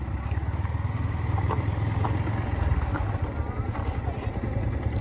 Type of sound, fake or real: real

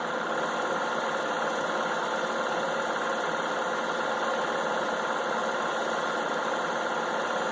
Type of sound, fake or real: real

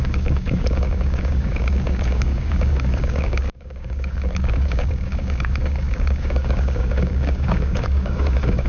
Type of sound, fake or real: fake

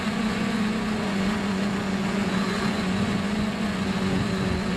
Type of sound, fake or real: fake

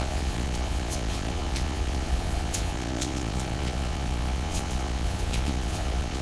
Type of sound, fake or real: fake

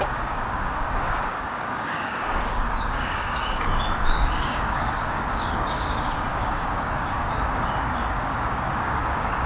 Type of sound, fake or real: fake